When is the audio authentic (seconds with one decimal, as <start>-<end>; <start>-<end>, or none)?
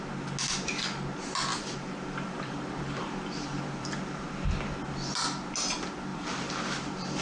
0.0-1.5; 4.0-6.1